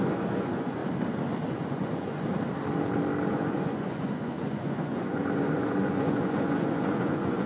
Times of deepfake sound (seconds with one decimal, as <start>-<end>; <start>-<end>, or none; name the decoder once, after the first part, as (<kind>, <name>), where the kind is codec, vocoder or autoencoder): 0.0-0.8 (vocoder, Vocos); 1.5-2.3; 3.3-7.5